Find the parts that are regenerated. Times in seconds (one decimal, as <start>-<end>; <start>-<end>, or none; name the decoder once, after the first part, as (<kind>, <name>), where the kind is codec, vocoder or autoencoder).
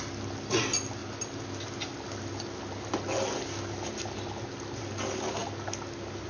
none